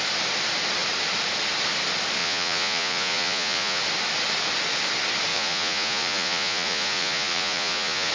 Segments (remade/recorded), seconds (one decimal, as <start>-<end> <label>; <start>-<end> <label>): 0.0-2.2 recorded; 2.2-3.8 remade; 3.8-5.3 recorded; 5.3-8.1 remade